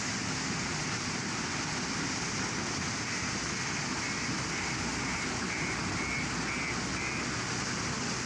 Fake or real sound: real